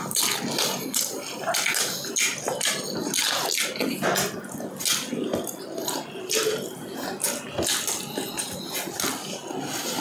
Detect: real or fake real